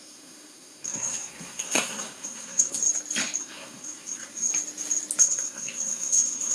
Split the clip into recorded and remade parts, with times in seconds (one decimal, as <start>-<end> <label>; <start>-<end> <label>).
0.0-2.8 remade; 2.8-3.4 recorded; 3.4-4.5 remade; 4.5-5.2 recorded; 5.2-6.5 remade